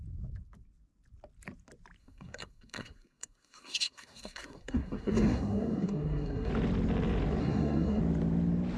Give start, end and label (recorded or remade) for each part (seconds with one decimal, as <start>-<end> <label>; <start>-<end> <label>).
0.0-2.0 recorded; 2.0-6.5 remade; 6.5-7.4 recorded; 7.4-8.0 remade; 8.0-8.8 recorded